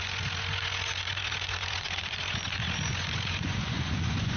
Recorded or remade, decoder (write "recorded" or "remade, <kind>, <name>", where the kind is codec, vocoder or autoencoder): remade, vocoder, Vocos